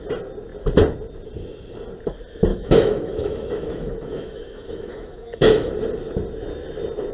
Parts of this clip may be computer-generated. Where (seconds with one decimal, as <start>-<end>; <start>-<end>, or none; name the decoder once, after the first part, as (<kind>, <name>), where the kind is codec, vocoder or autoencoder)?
2.5-5.7 (autoencoder, DAC-VAE)